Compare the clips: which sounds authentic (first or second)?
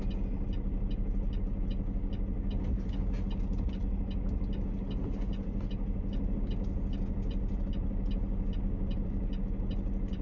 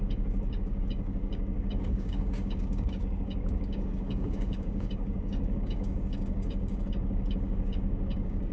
first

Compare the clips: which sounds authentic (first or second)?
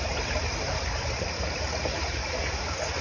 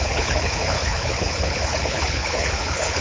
first